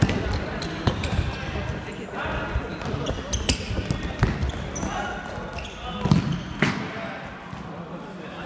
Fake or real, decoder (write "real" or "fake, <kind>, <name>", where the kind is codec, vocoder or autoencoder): real